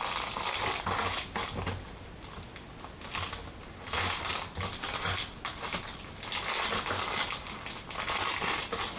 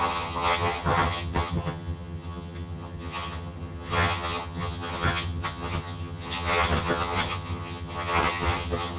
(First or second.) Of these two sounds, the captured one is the first